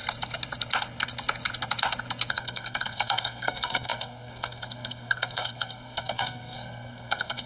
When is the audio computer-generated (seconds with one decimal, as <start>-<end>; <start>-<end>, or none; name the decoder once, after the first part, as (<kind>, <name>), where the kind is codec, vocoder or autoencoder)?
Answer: 2.3-7.5 (codec, SNAC)